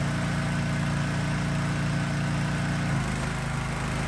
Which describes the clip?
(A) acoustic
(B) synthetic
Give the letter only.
A